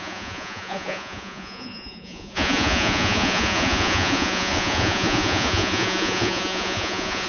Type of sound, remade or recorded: remade